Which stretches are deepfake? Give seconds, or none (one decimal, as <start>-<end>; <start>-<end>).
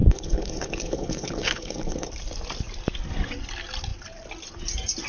0.0-2.1